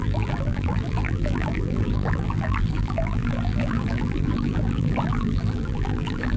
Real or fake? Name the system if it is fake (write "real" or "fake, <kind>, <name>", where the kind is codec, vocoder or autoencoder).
fake, vocoder, BigVGAN v2